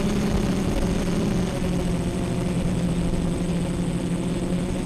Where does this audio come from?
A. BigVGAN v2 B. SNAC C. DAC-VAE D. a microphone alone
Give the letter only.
D